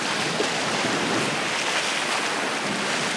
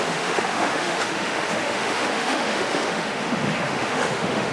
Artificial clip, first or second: second